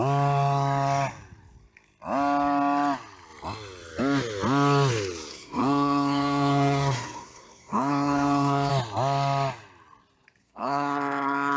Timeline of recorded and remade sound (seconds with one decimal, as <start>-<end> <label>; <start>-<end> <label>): 0.0-5.3 recorded; 5.3-8.7 remade; 8.7-10.4 recorded; 10.4-11.6 remade